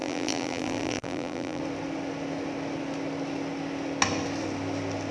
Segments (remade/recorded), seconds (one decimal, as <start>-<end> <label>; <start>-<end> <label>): 0.0-1.6 remade; 1.6-5.1 recorded